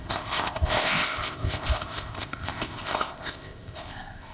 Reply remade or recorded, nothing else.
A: remade